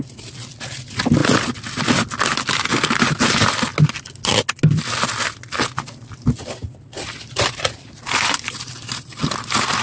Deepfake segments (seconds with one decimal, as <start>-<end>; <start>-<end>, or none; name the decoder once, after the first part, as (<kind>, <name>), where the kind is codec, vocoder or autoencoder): 6.6-8.7 (vocoder, BigVGAN v2)